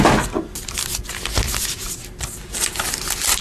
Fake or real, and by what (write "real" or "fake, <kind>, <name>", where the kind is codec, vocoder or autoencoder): real